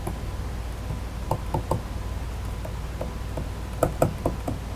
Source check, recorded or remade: recorded